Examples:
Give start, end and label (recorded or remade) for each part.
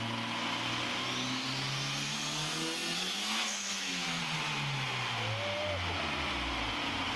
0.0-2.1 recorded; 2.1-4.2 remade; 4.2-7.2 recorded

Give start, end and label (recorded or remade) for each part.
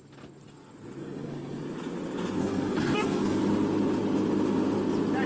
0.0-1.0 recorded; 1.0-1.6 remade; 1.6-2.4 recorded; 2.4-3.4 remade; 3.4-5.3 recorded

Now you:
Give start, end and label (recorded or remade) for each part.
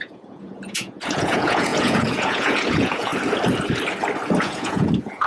0.0-3.1 remade; 3.1-4.4 recorded; 4.4-5.3 remade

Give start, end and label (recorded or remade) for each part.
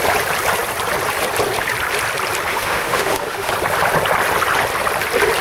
0.0-2.5 recorded; 2.5-3.5 remade; 3.5-5.4 recorded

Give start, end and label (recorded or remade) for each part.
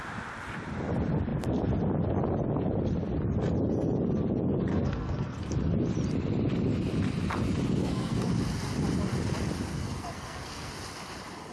0.0-4.7 recorded; 4.7-5.5 remade; 5.5-7.8 recorded; 7.8-8.3 remade; 8.3-9.7 recorded; 9.7-10.7 remade; 10.7-11.5 recorded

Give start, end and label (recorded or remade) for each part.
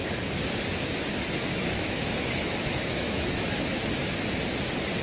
0.0-1.5 recorded; 1.5-3.6 remade; 3.6-5.0 recorded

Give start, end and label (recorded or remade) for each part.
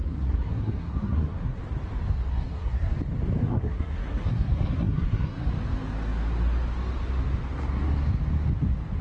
0.0-1.6 remade; 1.6-2.3 recorded; 2.3-2.9 remade; 2.9-3.4 recorded; 3.4-5.5 remade; 5.5-9.0 recorded